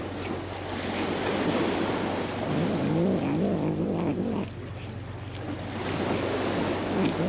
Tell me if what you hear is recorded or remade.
recorded